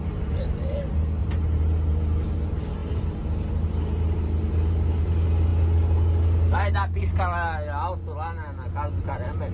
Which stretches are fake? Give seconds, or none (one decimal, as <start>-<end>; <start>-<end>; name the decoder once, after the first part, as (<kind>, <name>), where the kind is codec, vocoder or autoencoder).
1.2-1.9 (vocoder, BigVGAN v2)